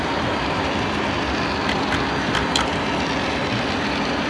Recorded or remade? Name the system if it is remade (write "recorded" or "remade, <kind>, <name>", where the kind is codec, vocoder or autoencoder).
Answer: recorded